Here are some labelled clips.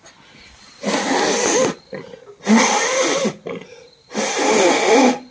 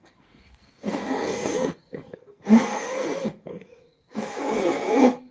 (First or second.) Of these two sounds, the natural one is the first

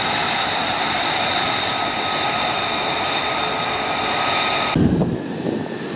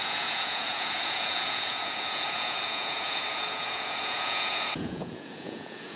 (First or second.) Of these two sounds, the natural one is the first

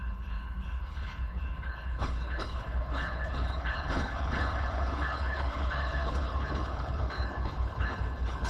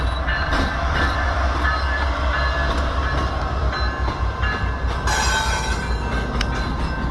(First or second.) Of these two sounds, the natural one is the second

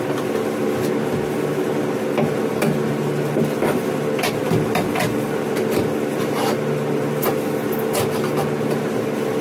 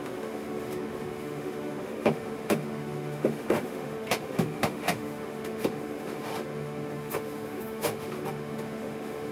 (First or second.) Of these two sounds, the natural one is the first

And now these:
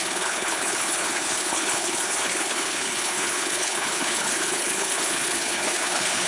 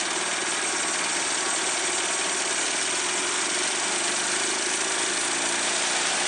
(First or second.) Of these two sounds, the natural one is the second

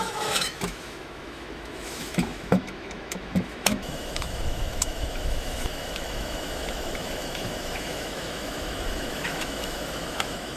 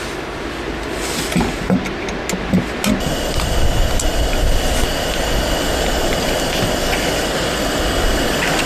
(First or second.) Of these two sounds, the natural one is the second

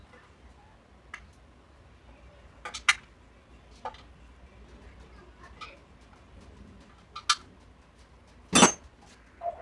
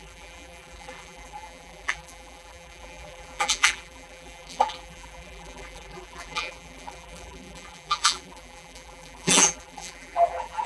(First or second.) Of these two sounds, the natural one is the first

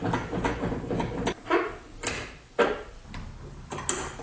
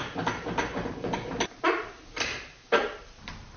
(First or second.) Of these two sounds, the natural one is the first